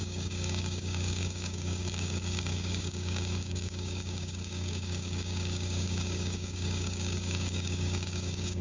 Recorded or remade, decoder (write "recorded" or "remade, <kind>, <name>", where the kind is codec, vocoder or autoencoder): remade, codec, DAC